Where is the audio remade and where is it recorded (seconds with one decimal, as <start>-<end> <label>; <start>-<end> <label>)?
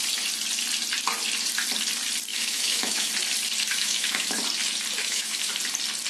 0.0-2.3 recorded; 2.3-3.1 remade; 3.1-3.7 recorded; 3.7-4.4 remade; 4.4-5.0 recorded; 5.0-5.5 remade; 5.5-6.1 recorded